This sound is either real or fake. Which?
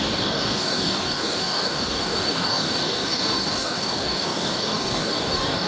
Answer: fake